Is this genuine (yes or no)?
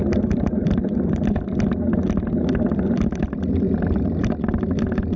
yes